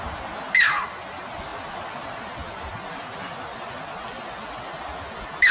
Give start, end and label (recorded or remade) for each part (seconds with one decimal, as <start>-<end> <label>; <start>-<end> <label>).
0.0-1.5 recorded; 1.5-4.8 remade; 4.8-5.5 recorded